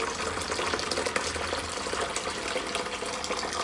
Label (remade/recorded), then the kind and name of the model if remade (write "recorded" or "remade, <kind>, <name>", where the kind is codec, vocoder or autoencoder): recorded